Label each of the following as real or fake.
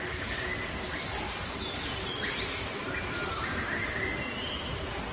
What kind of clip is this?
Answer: real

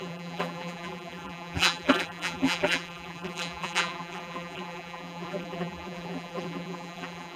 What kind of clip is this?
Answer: fake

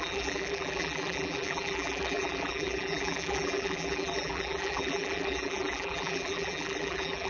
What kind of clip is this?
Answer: fake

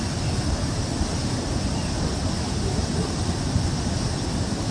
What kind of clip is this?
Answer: real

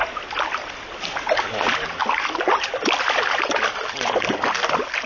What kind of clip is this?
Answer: fake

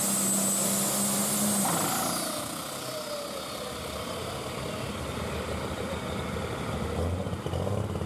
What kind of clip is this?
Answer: real